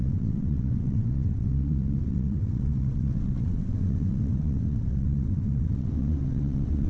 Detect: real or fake fake